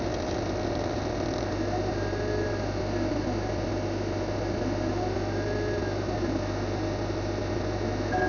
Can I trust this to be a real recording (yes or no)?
yes